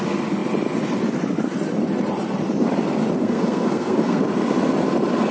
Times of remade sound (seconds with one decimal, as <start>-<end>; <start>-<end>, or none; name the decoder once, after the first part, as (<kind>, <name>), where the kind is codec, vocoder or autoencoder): 3.2-4.2 (codec, SNAC)